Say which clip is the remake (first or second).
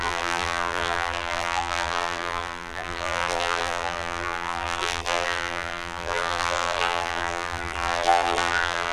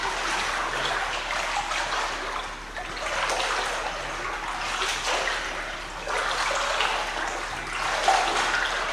first